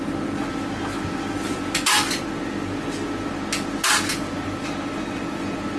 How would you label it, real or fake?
real